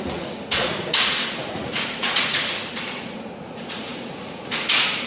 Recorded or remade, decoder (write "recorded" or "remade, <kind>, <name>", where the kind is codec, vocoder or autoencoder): remade, vocoder, Vocos